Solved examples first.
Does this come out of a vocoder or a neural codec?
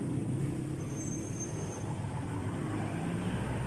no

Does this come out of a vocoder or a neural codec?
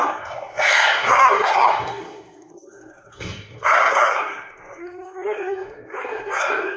yes